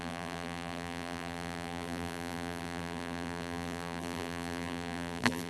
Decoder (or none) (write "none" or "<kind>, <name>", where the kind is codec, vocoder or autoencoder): vocoder, BigVGAN v2